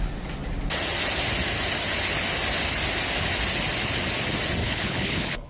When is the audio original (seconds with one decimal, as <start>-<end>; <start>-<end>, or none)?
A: 0.0-4.6